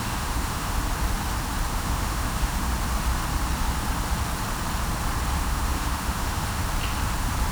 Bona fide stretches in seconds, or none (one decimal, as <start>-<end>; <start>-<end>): 0.8-1.7; 2.7-5.4; 6.6-7.5